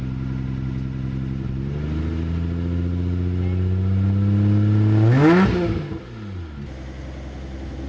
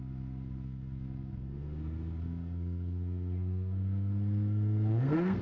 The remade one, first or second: second